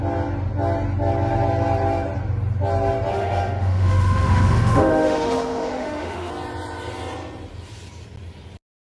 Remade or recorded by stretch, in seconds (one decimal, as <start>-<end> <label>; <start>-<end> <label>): 0.0-3.1 recorded; 3.1-6.3 remade; 6.3-8.9 recorded